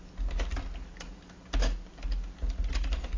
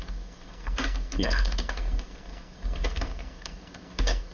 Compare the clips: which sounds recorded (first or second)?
first